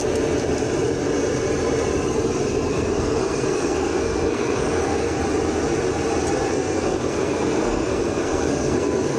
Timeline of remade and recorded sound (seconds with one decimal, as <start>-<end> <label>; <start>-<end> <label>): 0.0-2.7 recorded; 2.7-5.2 remade; 5.2-6.5 recorded; 6.5-9.2 remade